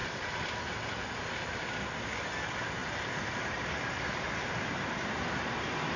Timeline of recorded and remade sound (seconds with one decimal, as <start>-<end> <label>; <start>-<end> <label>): 0.0-6.0 recorded